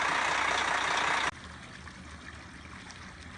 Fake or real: real